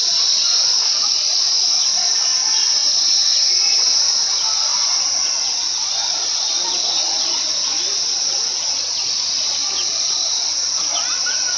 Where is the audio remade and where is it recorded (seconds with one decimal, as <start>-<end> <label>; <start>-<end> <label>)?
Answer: 0.0-11.6 recorded

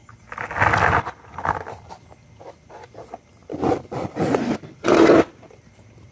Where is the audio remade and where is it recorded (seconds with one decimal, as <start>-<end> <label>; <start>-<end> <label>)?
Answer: 0.0-6.1 recorded

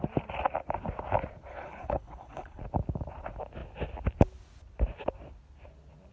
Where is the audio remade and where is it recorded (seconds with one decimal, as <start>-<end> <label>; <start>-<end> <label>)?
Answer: 0.0-1.5 recorded; 1.5-2.6 remade; 2.6-6.1 recorded

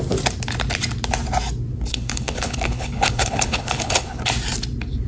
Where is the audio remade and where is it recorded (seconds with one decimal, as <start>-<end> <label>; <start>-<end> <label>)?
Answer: 0.0-1.9 recorded; 1.9-4.2 remade; 4.2-5.1 recorded